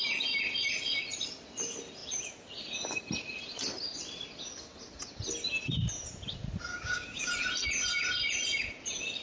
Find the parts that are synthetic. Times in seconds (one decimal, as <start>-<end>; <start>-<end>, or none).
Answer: 6.7-7.3